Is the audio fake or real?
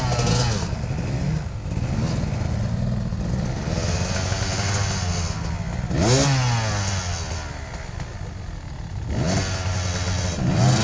real